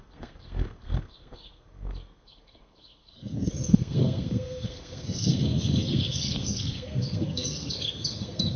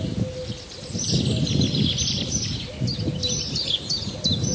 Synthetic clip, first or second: first